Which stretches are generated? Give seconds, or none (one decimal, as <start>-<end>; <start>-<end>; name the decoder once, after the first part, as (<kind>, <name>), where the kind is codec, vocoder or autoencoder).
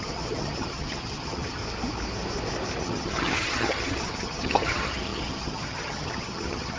0.0-1.6 (vocoder, HiFi-GAN); 2.8-6.8